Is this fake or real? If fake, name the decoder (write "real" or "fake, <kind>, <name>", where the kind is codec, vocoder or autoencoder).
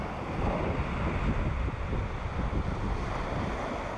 real